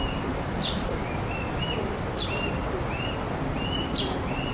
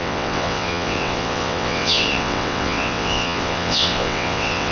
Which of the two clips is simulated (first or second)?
second